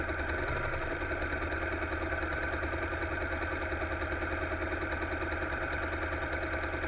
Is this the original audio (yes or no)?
yes